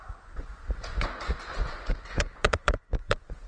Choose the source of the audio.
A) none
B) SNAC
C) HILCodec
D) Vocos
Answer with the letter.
D